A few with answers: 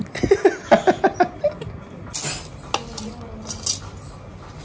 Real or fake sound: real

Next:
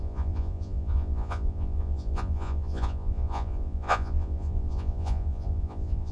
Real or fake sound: fake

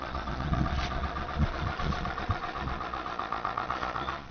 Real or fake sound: fake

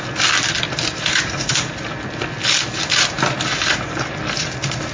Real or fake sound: real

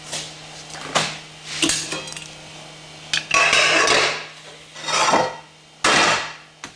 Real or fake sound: real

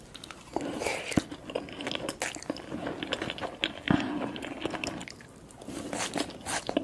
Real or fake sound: real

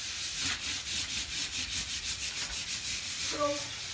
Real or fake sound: fake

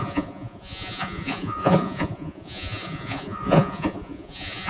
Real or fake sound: fake